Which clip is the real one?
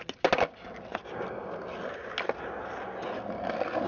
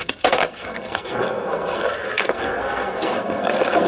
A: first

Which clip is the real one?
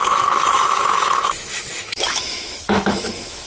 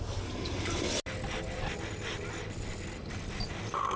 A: second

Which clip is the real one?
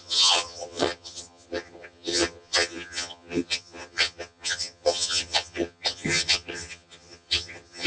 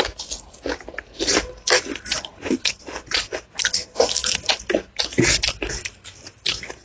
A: second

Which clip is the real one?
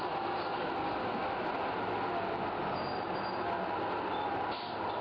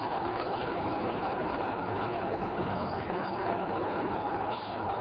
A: first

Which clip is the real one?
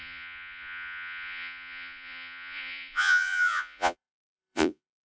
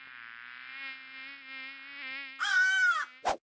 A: second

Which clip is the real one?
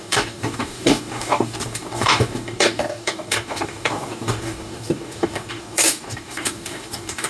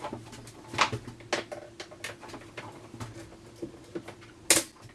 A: second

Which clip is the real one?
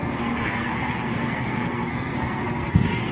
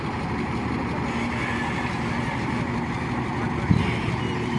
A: second